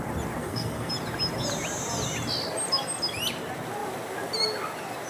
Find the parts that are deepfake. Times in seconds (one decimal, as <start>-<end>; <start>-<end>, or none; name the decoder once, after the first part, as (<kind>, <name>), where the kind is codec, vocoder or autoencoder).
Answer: 0.4-0.9 (codec, SNAC)